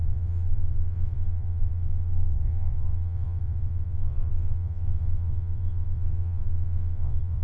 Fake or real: fake